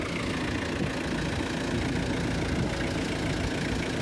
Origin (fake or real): real